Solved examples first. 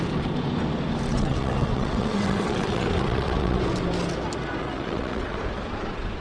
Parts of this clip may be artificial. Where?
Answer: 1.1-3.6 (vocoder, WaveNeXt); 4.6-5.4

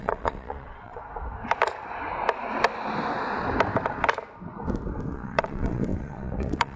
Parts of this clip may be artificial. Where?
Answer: 0.0-1.0 (vocoder, WaveNeXt); 5.1-6.8